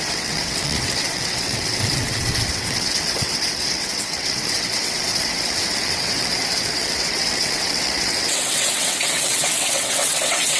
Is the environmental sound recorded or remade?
remade